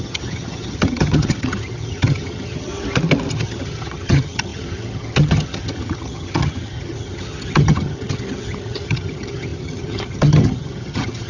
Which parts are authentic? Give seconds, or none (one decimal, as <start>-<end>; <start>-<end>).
2.7-3.3